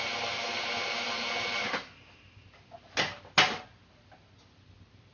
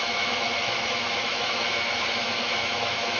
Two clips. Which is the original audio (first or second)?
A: first